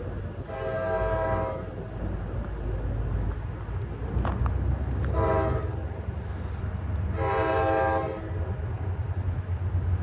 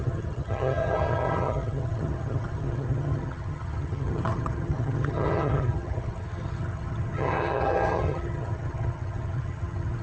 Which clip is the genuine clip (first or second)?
first